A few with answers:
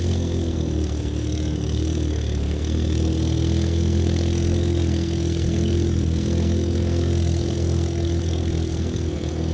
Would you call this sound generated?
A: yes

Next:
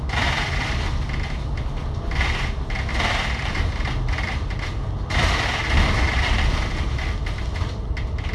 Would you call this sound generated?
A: no